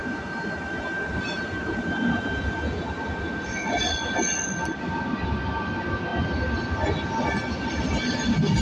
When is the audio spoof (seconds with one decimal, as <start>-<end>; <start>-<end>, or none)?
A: 0.0-2.2